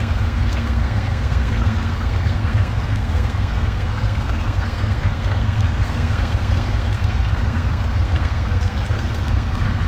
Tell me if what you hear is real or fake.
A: fake